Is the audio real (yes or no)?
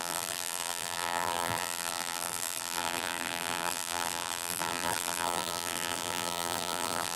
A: no